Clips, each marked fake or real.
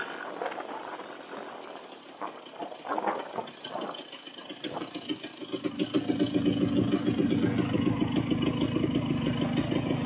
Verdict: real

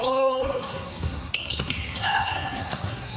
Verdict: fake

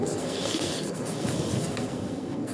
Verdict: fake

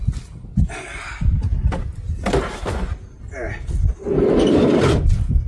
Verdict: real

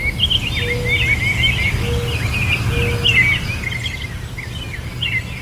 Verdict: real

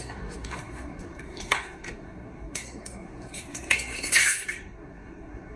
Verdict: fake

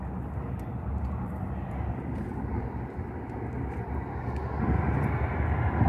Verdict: real